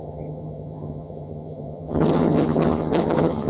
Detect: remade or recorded remade